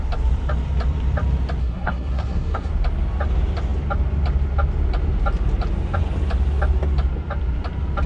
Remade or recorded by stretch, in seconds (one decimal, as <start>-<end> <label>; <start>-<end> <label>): 0.0-1.6 recorded; 1.6-2.7 remade; 2.7-8.1 recorded